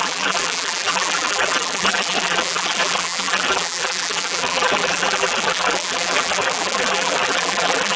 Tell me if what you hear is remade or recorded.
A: remade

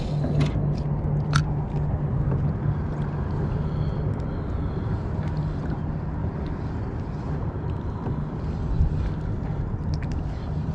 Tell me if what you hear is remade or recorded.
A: recorded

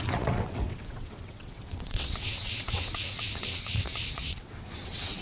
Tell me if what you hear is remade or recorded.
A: remade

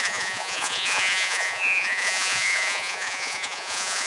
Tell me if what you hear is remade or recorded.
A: remade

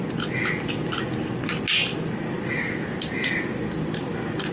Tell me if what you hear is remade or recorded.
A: recorded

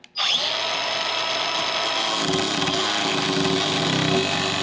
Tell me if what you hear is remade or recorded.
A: recorded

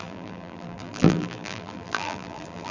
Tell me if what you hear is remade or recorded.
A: remade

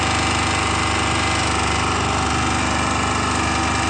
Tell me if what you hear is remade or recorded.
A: recorded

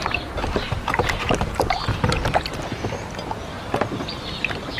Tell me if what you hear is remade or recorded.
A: recorded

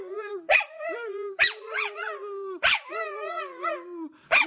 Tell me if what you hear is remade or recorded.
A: remade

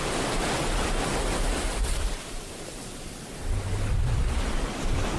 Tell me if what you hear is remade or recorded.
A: recorded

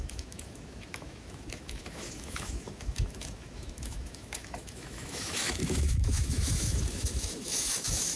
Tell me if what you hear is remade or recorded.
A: remade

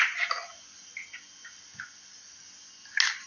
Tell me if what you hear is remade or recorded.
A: recorded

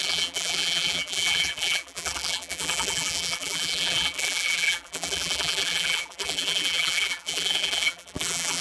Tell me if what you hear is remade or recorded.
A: remade